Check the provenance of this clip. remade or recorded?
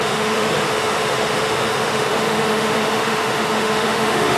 remade